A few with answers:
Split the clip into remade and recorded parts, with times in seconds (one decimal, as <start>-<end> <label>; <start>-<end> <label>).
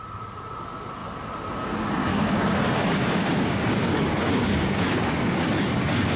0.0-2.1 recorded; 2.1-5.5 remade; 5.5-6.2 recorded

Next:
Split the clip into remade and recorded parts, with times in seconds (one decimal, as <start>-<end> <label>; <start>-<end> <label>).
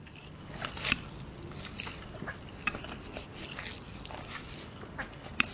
0.0-5.5 recorded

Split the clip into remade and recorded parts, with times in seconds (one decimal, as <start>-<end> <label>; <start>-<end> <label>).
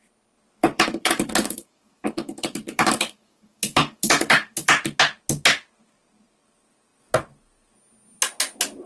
0.0-0.6 recorded; 0.6-4.7 remade; 4.7-8.9 recorded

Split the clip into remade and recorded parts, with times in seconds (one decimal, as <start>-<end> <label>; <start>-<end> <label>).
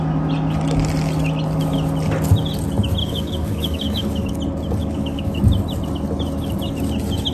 0.0-3.0 recorded; 3.0-4.3 remade; 4.3-4.8 recorded; 4.8-5.4 remade; 5.4-7.3 recorded